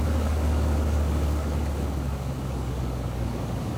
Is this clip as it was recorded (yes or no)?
no